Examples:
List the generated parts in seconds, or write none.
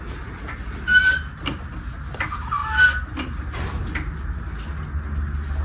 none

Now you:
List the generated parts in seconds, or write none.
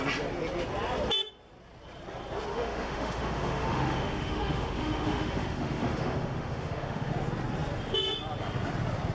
2.5-7.1 (autoencoder, DAC-VAE)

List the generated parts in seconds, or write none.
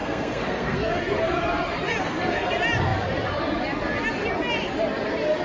0.0-0.9 (codec, SNAC); 2.0-2.5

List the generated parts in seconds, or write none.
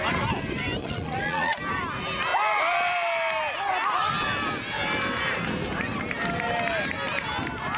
0.8-1.6 (vocoder, Vocos)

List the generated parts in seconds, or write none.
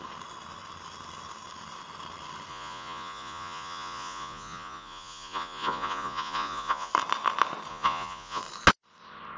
2.5-6.9 (vocoder, Vocos); 7.7-8.4